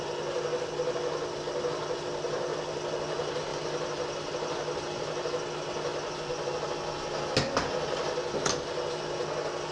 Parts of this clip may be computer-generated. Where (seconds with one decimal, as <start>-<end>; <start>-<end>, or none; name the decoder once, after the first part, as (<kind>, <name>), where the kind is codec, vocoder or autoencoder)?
none